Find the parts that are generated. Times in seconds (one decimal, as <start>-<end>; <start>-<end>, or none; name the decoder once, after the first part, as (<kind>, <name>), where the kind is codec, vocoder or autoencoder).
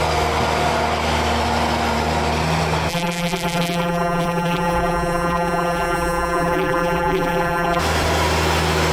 2.9-7.8 (vocoder, BigVGAN v2)